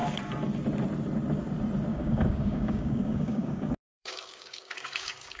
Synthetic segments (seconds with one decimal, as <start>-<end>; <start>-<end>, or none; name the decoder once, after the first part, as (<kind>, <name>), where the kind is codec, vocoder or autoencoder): 1.9-5.4 (codec, DAC)